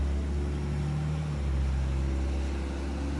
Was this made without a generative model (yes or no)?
yes